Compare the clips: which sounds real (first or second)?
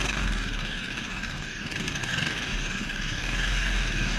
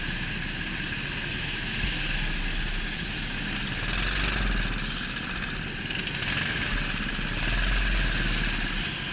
second